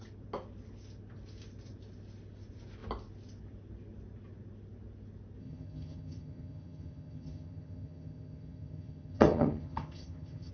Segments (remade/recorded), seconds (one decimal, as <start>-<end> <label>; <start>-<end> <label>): 0.0-5.4 recorded; 5.4-10.5 remade